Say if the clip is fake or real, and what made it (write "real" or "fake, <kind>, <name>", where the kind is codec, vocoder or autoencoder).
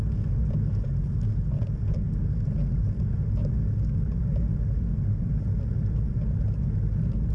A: real